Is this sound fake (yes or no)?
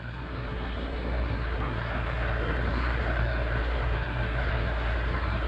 yes